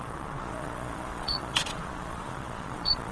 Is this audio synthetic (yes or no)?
yes